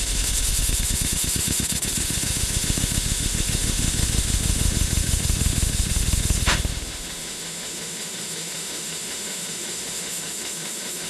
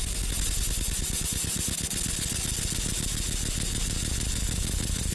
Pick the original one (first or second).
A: second